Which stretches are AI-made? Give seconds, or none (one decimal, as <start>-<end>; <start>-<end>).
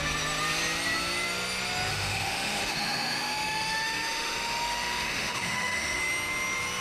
1.9-6.0